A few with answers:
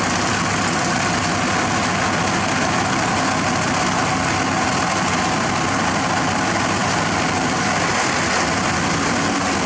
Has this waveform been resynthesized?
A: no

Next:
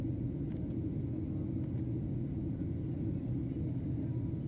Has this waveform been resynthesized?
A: no